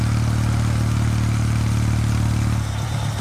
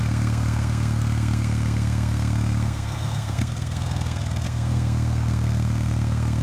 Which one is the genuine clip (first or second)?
first